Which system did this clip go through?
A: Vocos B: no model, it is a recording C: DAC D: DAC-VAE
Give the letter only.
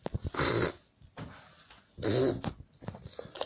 B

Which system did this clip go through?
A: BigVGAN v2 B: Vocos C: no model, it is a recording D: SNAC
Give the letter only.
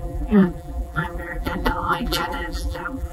A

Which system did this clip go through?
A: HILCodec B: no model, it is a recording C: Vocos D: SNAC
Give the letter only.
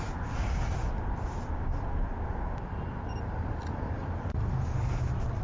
B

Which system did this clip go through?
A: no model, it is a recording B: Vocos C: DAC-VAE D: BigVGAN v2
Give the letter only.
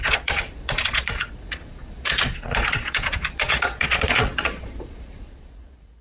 B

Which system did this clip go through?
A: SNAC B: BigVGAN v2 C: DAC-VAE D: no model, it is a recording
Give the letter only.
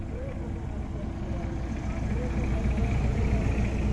D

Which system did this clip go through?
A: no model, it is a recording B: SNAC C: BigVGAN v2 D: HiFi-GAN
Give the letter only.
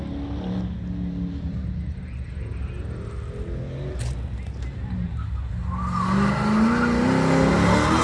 A